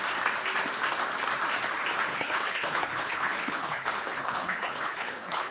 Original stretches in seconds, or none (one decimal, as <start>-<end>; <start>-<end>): 0.0-2.1